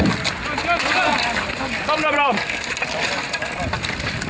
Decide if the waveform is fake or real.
fake